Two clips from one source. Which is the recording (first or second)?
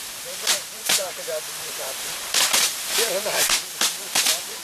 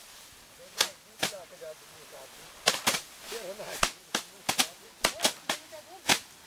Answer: second